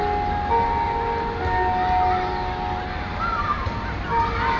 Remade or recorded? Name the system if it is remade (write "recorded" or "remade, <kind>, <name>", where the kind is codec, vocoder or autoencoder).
recorded